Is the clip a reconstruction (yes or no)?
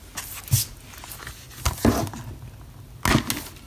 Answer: no